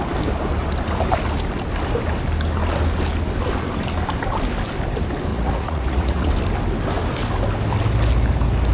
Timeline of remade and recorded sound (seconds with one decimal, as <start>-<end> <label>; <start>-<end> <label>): 0.0-5.3 recorded; 5.3-6.3 remade; 6.3-8.7 recorded